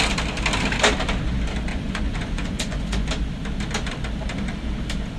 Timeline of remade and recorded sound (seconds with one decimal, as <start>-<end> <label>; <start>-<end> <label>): 0.0-1.7 recorded; 1.7-3.1 remade; 3.1-5.2 recorded